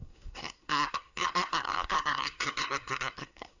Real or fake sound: fake